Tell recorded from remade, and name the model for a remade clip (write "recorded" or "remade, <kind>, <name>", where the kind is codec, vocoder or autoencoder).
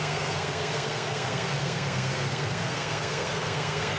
remade, codec, SNAC